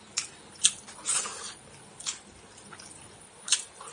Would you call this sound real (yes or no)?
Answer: yes